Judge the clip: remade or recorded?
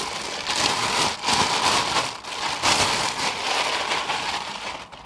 recorded